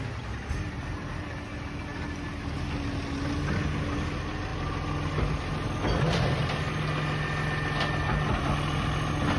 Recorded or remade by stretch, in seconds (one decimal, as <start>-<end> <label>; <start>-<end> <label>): 0.0-9.4 recorded